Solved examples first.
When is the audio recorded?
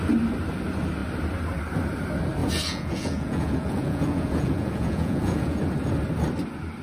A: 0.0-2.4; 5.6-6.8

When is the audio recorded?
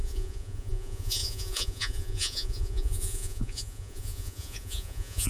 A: none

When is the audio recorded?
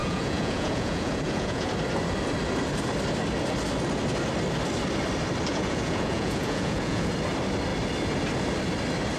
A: 1.7-5.5; 7.1-9.2